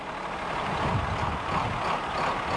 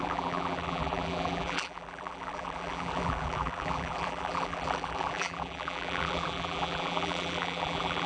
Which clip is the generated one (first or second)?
second